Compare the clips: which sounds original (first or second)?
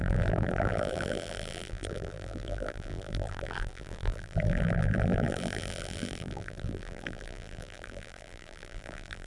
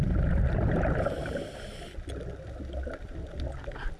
second